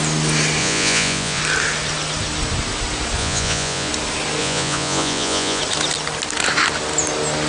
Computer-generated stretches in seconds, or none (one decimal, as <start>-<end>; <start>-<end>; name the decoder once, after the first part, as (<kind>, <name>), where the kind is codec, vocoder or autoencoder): 0.6-1.4 (vocoder, Vocos); 3.2-3.9; 4.4-5.6